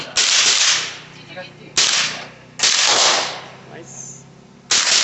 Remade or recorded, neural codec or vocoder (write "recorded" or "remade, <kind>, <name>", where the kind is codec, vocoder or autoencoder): recorded